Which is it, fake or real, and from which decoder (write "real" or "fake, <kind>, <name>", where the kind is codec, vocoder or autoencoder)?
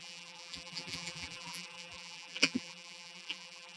fake, vocoder, BigVGAN v2